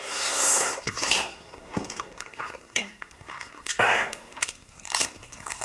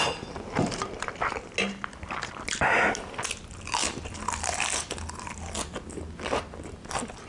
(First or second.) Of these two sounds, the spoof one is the first